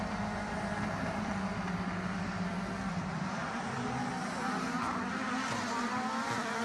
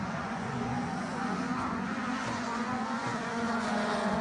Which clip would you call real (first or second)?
first